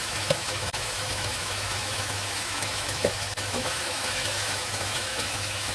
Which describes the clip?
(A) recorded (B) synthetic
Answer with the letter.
B